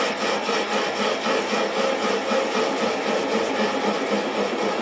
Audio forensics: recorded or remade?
recorded